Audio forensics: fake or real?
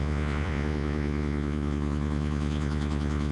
fake